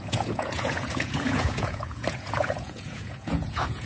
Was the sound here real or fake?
fake